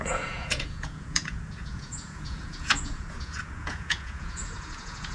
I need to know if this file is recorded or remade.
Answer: remade